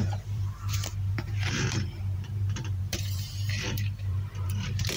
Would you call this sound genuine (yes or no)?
no